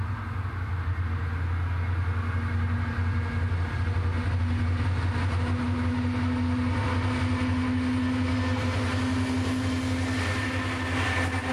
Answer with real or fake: real